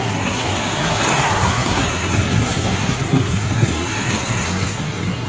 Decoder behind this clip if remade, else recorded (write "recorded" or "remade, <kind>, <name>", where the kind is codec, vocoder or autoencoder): remade, codec, SNAC